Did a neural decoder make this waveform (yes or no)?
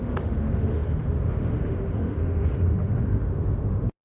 yes